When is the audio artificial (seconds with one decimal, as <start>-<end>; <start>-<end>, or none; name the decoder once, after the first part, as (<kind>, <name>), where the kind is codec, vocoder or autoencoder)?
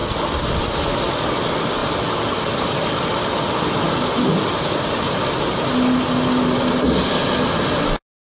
none